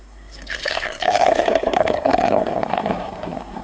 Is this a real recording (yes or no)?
no